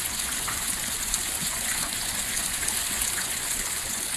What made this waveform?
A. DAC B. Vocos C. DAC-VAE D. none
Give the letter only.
B